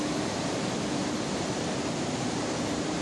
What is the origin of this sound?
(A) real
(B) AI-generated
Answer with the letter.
B